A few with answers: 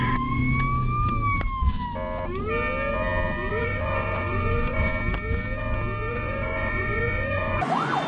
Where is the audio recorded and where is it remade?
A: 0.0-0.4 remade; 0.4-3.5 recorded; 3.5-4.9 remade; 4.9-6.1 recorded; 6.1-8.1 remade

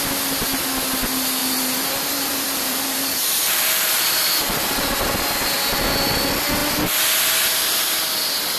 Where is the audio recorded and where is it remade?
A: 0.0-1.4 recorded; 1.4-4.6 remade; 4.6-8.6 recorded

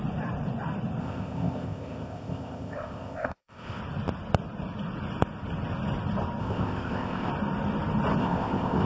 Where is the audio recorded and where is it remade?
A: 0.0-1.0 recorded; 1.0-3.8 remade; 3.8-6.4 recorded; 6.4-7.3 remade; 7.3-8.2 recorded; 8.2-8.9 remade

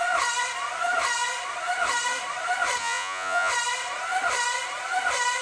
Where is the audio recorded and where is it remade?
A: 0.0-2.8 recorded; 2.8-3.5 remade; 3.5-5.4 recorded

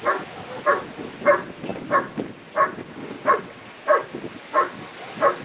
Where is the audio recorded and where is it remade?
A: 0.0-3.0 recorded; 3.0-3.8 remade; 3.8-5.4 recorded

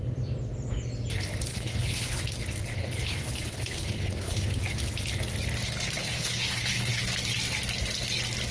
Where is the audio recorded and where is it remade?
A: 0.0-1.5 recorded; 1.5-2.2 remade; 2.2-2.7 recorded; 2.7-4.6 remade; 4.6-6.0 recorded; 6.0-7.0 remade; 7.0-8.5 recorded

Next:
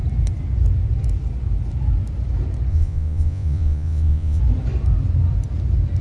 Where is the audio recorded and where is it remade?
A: 0.0-2.7 recorded; 2.7-4.4 remade; 4.4-6.0 recorded